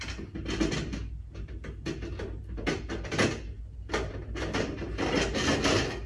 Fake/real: real